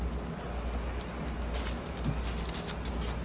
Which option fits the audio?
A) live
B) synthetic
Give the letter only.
A